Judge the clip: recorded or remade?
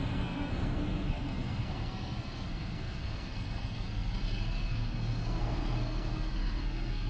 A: remade